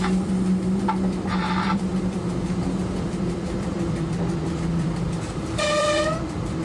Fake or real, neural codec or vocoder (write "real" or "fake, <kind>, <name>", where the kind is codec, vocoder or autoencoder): fake, vocoder, BigVGAN v2